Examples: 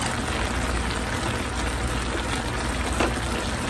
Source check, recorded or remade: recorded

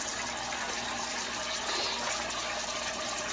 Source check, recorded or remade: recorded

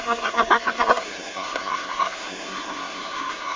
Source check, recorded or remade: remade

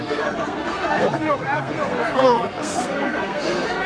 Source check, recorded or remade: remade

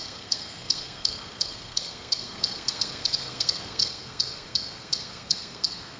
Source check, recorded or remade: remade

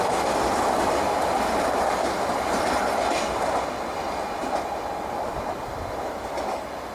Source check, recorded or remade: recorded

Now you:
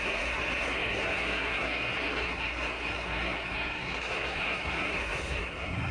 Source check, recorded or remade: remade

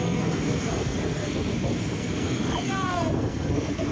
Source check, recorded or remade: remade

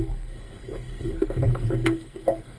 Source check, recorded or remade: remade